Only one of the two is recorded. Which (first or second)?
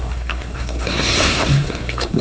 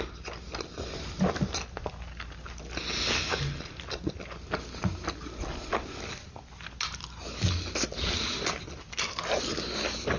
second